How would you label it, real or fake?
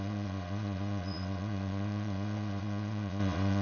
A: fake